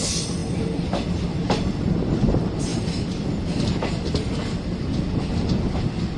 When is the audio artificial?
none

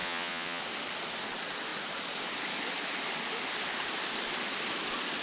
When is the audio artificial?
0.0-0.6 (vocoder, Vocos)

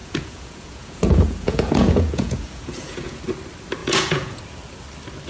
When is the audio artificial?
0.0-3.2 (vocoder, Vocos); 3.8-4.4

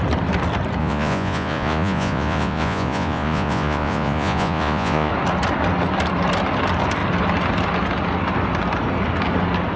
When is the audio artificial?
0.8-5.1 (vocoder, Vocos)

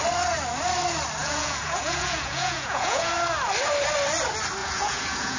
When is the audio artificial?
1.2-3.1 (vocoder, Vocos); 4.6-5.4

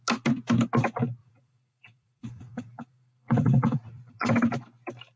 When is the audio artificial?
1.2-4.3 (vocoder, Vocos)

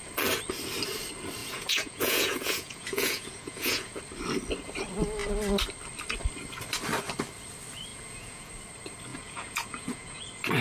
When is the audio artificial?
1.4-4.0 (vocoder, Vocos); 7.9-8.5; 9.1-10.2